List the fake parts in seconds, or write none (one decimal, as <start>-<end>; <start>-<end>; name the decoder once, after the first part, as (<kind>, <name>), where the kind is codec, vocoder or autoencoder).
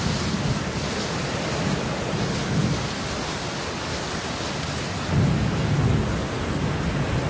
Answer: none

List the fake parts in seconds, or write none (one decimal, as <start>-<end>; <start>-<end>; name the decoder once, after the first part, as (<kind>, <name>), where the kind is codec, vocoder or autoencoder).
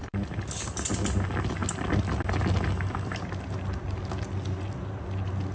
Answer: none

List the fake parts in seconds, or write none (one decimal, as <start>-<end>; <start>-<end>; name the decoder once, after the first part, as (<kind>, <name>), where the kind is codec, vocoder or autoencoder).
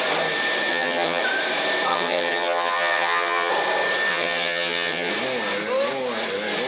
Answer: 0.7-1.2 (vocoder, HiFi-GAN); 1.9-3.5; 4.1-5.1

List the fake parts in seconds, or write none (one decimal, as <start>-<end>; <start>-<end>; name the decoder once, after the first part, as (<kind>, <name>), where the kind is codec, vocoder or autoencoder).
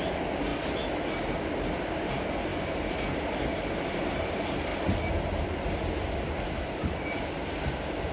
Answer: none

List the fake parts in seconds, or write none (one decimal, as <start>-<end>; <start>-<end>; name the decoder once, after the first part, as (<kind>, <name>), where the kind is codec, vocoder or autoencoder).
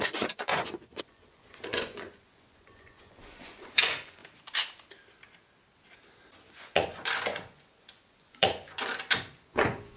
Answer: 0.0-4.2 (vocoder, Vocos); 6.5-10.0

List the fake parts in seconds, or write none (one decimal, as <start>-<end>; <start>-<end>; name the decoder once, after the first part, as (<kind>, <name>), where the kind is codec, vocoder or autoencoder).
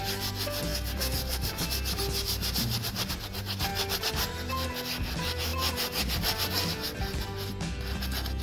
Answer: none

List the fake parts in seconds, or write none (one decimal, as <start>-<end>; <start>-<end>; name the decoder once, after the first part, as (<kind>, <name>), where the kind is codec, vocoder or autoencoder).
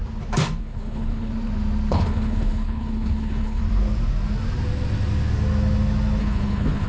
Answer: 0.6-1.3 (codec, HILCodec); 1.9-3.6; 6.2-6.9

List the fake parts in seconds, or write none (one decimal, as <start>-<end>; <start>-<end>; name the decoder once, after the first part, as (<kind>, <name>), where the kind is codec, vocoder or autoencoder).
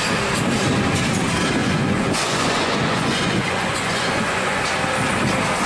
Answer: 1.6-4.6 (vocoder, Vocos)